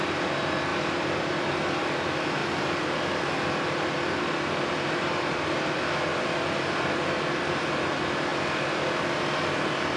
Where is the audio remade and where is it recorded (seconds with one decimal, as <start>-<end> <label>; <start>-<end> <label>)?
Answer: 0.0-10.0 recorded

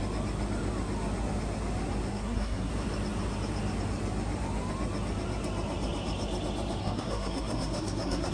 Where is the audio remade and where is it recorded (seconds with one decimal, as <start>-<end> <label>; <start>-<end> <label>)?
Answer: 0.0-2.1 recorded; 2.1-2.7 remade; 2.7-6.8 recorded; 6.8-8.3 remade